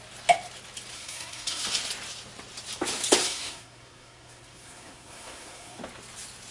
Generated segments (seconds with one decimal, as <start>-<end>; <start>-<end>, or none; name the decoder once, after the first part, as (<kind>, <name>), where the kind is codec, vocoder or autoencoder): 0.9-1.6 (codec, SNAC); 3.2-5.8